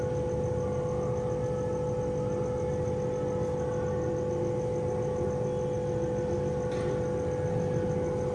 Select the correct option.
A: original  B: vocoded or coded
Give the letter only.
A